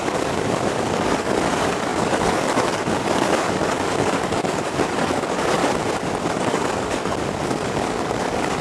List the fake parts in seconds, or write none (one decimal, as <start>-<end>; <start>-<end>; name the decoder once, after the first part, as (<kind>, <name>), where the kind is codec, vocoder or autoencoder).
0.0-5.6 (codec, DAC); 6.3-8.6